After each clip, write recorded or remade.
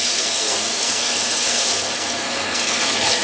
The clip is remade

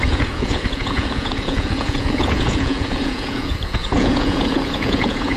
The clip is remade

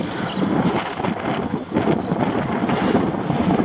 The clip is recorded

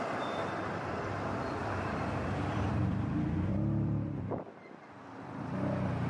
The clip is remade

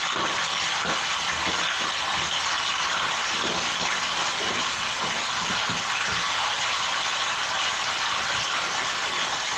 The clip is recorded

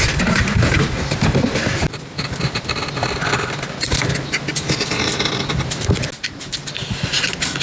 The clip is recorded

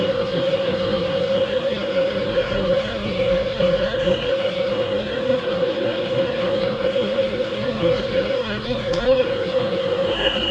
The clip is remade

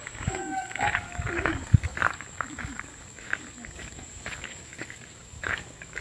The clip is remade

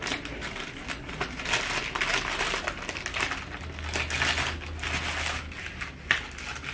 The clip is recorded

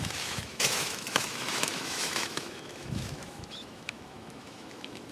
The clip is remade